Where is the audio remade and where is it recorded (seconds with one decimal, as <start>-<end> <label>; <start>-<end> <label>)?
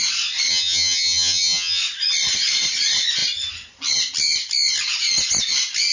0.0-0.5 recorded; 0.5-1.8 remade; 1.8-5.9 recorded